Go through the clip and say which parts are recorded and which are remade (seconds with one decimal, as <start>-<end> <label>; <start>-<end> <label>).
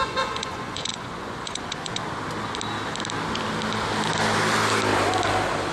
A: 0.0-2.0 remade; 2.0-5.7 recorded